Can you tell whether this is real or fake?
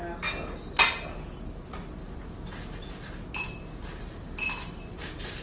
real